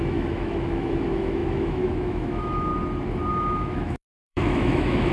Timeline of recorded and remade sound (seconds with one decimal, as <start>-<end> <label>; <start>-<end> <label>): 0.0-2.7 remade; 2.7-3.3 recorded; 3.3-5.1 remade